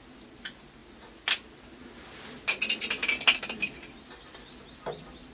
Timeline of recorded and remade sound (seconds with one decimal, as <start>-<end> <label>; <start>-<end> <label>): 0.0-5.3 recorded